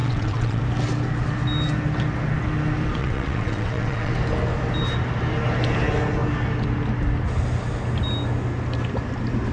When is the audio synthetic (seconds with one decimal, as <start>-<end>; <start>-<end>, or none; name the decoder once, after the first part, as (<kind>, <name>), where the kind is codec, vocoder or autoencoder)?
0.0-0.6 (vocoder, WaveNeXt); 3.0-4.1